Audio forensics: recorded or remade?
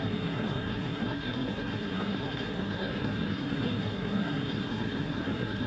remade